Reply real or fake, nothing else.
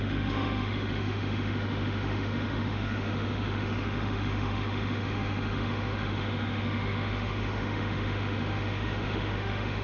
fake